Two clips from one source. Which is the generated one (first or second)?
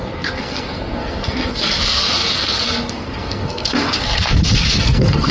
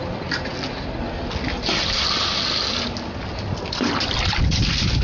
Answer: first